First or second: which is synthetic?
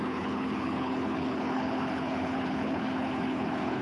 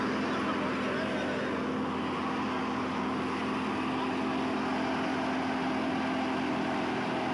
first